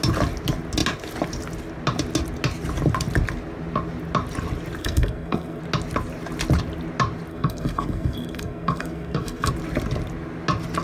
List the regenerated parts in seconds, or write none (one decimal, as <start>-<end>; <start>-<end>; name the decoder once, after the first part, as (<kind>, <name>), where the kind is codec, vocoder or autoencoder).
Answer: 4.8-5.6 (codec, SNAC); 7.3-9.5